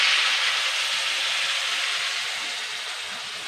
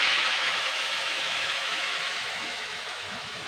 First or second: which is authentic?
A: first